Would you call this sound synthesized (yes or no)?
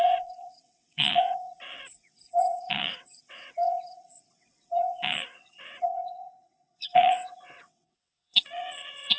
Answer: yes